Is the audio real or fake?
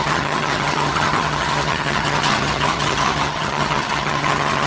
fake